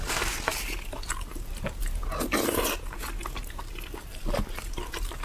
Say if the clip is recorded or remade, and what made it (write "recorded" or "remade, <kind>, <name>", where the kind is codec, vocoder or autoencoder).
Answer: recorded